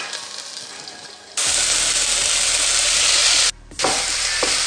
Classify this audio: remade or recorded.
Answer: recorded